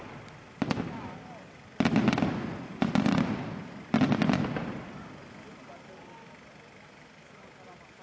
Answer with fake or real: real